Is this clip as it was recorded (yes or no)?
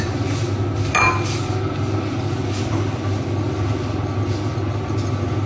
yes